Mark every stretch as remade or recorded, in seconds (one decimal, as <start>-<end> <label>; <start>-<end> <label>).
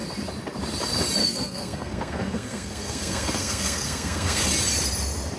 0.0-1.2 recorded; 1.2-4.4 remade; 4.4-5.4 recorded